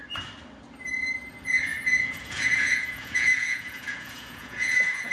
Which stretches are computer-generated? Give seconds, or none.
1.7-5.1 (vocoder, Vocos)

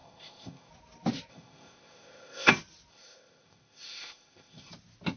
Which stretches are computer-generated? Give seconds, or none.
0.0-0.7 (codec, ZipCodec); 1.3-2.5; 2.9-4.7

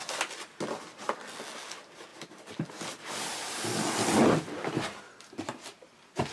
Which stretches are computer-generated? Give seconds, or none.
2.1-2.7 (vocoder, BigVGAN v2)

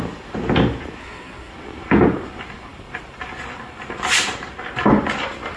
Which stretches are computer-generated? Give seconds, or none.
1.0-1.5 (codec, SNAC)

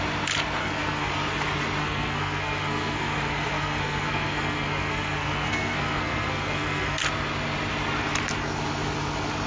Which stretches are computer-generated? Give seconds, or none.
0.6-1.1 (codec, SNAC); 1.8-7.0

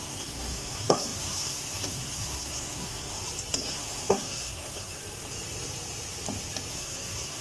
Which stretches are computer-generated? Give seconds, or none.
0.0-3.2 (codec, SNAC); 3.7-5.0; 6.7-7.4

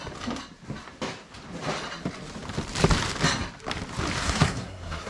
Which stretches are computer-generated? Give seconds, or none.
4.2-5.1 (codec, SNAC)

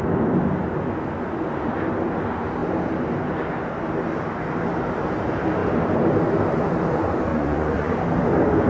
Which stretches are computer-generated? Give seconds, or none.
7.3-7.9 (vocoder, Vocos)